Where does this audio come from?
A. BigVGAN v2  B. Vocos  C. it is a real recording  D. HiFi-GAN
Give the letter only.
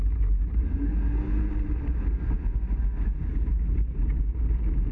C